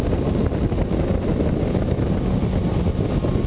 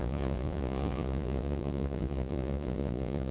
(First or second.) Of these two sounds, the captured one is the first